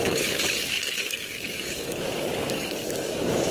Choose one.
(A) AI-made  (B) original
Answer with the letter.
A